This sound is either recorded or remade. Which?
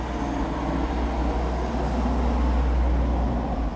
recorded